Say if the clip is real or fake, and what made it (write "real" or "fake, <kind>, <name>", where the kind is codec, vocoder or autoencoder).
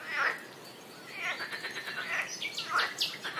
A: real